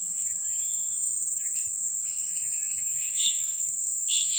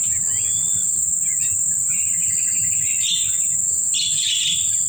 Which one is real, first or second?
second